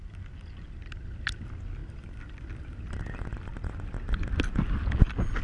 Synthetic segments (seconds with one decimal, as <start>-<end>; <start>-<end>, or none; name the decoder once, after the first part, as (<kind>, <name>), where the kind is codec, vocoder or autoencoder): none